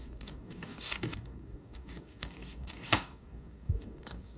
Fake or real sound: fake